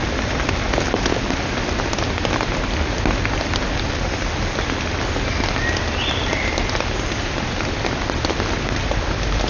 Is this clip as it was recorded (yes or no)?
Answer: yes